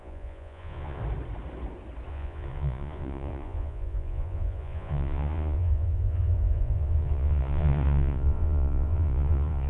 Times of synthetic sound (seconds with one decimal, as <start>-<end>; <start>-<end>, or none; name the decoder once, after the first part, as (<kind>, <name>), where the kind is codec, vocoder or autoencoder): 0.0-1.0 (vocoder, Vocos); 2.1-9.7